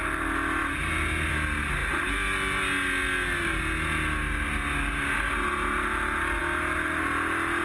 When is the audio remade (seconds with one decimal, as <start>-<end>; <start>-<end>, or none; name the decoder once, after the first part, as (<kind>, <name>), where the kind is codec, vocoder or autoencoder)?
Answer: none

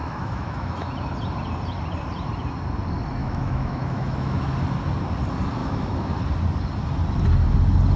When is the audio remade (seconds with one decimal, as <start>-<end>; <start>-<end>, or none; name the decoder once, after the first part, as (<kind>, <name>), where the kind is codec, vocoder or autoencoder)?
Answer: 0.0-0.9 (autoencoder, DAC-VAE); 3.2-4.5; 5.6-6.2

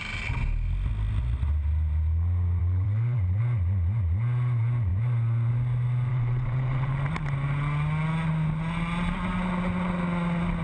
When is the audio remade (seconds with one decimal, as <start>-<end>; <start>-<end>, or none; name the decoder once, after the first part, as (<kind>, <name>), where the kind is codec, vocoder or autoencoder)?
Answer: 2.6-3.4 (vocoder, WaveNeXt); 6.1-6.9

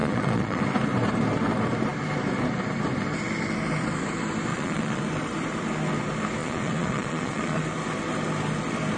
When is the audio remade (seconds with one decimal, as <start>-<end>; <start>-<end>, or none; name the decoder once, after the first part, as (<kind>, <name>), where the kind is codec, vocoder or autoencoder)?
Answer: 0.0-0.6 (vocoder, Vocos); 4.5-5.0; 6.4-7.6

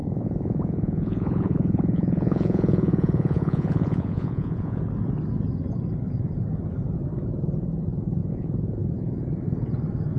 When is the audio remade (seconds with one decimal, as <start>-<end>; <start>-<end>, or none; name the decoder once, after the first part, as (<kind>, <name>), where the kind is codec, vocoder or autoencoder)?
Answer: 0.0-4.8 (vocoder, Vocos); 8.2-8.8